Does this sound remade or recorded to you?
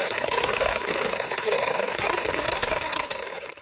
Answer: remade